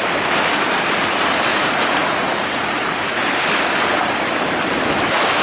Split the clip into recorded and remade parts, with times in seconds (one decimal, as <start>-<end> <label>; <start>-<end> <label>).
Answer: 0.0-1.5 recorded; 1.5-3.2 remade; 3.2-5.4 recorded